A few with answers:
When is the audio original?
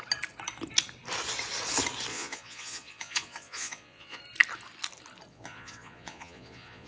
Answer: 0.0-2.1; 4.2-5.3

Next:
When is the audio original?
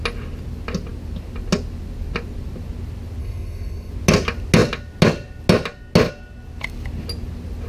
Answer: 0.0-3.2; 3.9-7.7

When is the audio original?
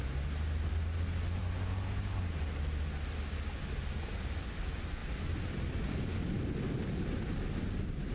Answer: 0.0-8.1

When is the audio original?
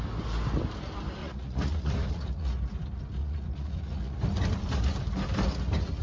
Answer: 0.0-1.2; 2.5-3.2; 4.2-6.0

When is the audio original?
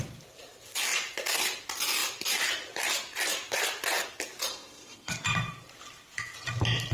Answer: 0.0-4.5; 5.1-6.9